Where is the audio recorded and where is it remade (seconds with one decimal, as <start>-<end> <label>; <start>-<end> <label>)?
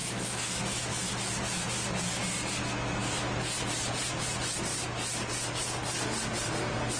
0.0-1.7 remade; 1.7-7.0 recorded